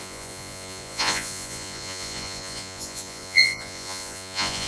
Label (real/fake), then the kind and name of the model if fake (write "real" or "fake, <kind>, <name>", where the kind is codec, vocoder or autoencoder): fake, vocoder, Vocos